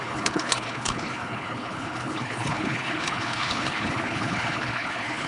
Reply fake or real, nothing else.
fake